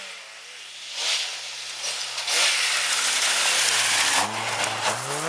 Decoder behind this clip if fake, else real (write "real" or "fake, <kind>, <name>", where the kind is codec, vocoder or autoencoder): real